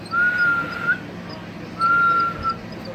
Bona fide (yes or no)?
yes